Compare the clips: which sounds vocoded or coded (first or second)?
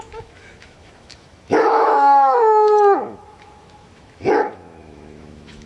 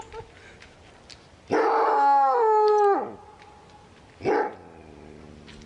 first